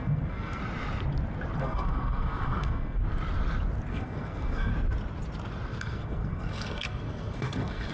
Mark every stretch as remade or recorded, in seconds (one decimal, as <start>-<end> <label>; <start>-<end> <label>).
0.0-0.6 remade; 0.6-1.6 recorded; 1.6-3.0 remade; 3.0-3.9 recorded; 3.9-4.7 remade; 4.7-5.8 recorded; 5.8-7.9 remade